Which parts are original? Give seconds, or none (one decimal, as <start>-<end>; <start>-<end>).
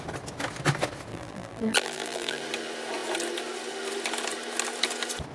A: 0.0-1.1; 2.4-5.3